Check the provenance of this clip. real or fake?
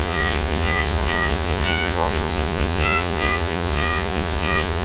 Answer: fake